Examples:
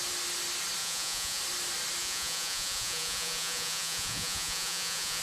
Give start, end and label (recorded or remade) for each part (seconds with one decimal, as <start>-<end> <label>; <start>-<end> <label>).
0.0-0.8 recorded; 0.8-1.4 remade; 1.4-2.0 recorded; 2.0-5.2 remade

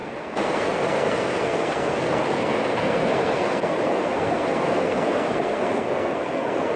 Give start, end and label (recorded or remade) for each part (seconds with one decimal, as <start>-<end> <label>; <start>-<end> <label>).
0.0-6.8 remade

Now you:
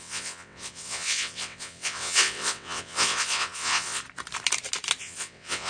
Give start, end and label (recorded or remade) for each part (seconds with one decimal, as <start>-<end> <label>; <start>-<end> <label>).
0.0-4.0 remade; 4.0-5.0 recorded; 5.0-5.7 remade